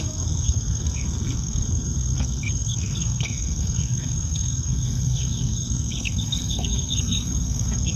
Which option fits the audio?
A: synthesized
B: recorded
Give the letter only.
A